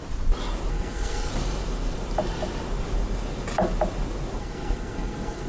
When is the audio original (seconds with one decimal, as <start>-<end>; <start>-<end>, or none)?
0.0-0.7; 1.3-4.4